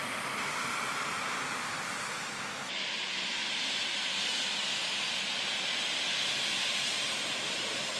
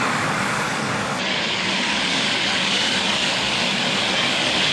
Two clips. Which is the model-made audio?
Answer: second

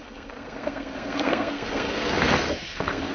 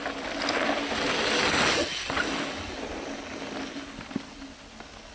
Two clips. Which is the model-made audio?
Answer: first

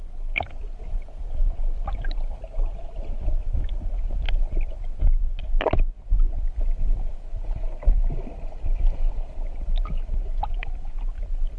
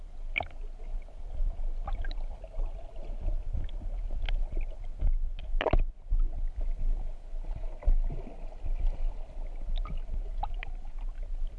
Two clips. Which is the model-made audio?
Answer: first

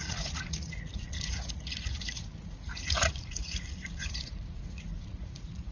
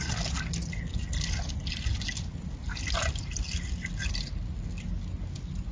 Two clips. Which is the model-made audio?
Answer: first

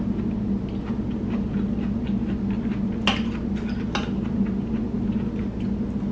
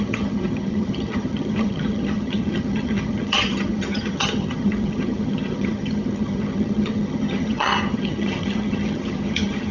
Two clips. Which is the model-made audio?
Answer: second